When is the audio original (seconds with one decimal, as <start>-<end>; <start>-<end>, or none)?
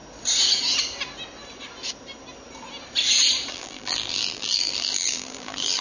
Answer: 0.0-3.5